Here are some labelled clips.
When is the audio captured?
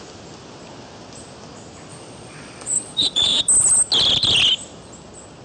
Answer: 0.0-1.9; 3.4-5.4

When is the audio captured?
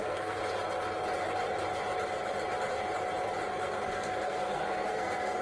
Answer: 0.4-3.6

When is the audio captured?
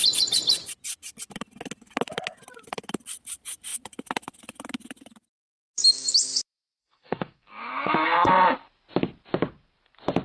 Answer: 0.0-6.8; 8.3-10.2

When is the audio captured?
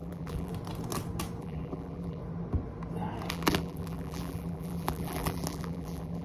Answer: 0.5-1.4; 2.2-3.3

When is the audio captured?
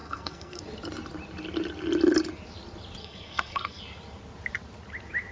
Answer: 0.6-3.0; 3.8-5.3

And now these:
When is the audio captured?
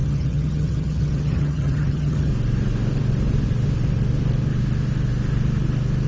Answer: 2.3-6.1